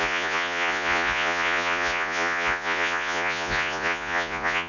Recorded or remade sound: remade